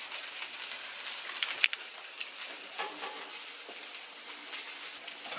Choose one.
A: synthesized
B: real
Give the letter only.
B